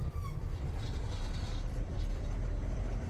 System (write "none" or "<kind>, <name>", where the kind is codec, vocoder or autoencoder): vocoder, BigVGAN v2